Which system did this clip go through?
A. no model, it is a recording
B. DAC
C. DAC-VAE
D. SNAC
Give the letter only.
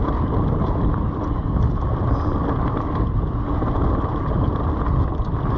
A